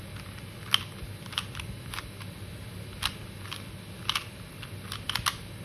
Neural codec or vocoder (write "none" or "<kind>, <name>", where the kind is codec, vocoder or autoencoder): none